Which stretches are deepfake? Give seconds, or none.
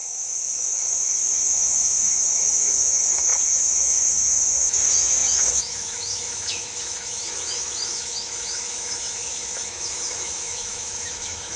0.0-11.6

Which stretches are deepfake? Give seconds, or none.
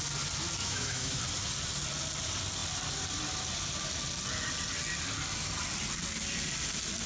0.6-1.2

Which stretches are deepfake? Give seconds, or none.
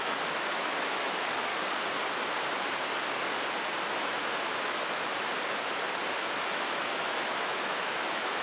0.0-1.5; 3.9-5.3; 6.1-8.4